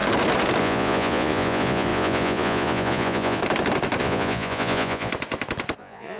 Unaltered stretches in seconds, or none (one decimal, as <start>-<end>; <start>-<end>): 0.0-0.6; 3.4-4.0; 5.1-5.8